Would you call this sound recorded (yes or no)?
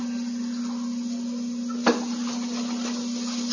yes